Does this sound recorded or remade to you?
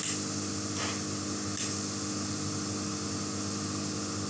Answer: recorded